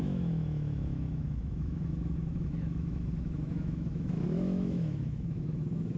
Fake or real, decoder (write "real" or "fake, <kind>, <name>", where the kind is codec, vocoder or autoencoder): fake, autoencoder, DAC-VAE